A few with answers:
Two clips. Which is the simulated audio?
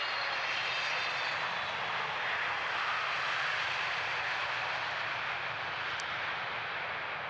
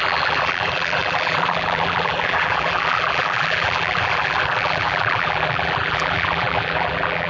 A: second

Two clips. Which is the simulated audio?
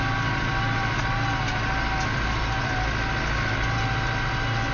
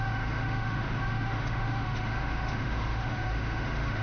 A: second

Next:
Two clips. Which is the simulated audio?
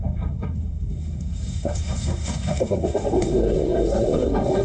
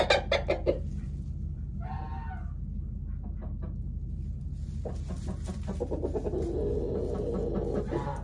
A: first